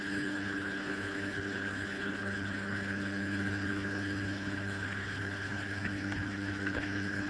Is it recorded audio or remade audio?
remade